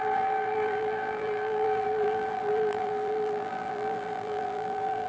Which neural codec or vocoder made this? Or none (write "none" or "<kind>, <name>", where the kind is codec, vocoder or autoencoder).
vocoder, BigVGAN v2